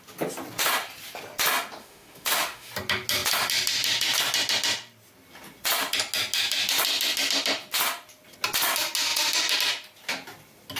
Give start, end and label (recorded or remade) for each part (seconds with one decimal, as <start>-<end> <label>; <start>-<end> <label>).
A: 0.0-1.8 recorded; 1.8-2.7 remade; 2.7-10.8 recorded